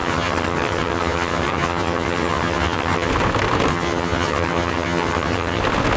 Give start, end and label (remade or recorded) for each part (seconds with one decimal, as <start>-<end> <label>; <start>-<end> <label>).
0.0-3.1 remade; 3.1-3.7 recorded; 3.7-5.6 remade; 5.6-6.0 recorded